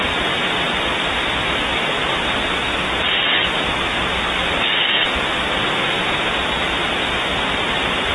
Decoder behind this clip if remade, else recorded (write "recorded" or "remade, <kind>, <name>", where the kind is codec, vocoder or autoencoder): recorded